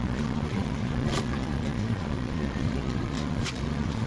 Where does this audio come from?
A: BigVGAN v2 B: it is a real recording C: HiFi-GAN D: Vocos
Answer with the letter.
D